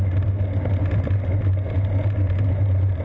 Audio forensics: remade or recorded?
recorded